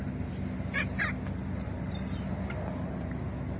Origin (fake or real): real